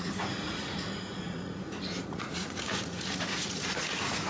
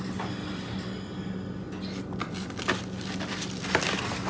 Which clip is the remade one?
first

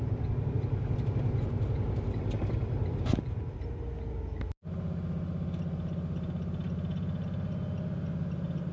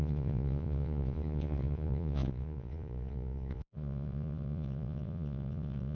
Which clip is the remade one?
second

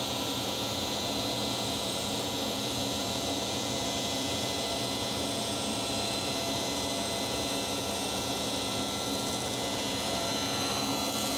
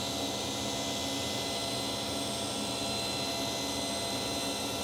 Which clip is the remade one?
first